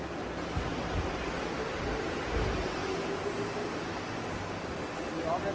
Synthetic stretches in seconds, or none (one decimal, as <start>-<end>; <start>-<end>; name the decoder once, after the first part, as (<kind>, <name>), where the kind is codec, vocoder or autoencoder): none